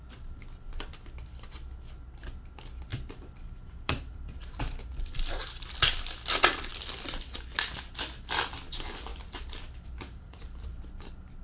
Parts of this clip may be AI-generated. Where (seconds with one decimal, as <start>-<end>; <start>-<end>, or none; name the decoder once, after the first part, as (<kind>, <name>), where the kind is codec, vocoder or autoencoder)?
2.9-5.4 (vocoder, BigVGAN v2); 9.1-10.7